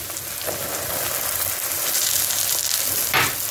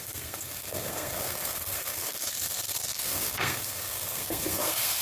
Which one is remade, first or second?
second